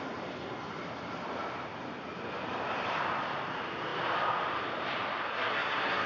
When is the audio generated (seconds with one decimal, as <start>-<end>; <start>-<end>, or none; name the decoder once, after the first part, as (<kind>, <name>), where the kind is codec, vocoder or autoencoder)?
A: 5.3-6.1 (codec, SNAC)